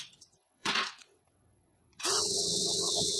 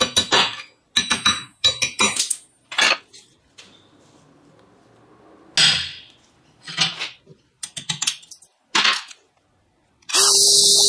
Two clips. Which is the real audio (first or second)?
second